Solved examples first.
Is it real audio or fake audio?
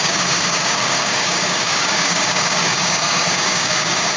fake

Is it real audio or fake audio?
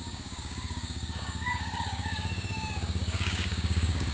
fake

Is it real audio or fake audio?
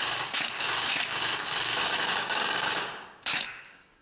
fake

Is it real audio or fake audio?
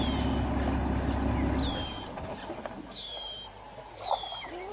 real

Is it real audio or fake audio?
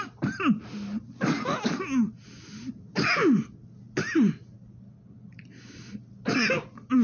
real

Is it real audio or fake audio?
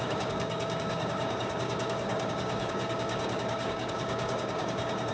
fake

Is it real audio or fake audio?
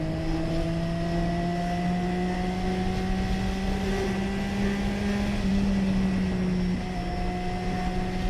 real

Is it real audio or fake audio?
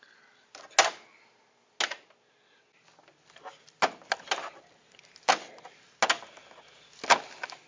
real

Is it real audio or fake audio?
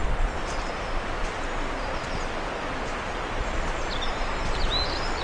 real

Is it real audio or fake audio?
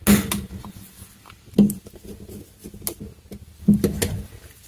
real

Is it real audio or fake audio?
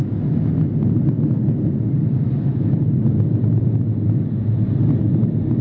real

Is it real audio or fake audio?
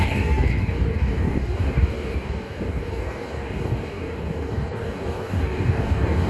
fake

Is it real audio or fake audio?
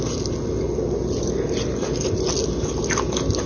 real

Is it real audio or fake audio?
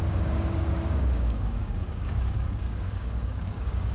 fake